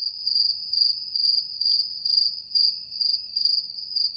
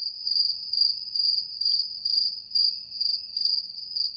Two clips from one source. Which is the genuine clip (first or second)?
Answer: first